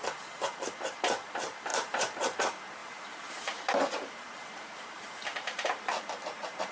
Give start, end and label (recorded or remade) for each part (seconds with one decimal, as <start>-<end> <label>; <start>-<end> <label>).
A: 0.0-1.7 recorded; 1.7-2.4 remade; 2.4-2.8 recorded; 2.8-6.7 remade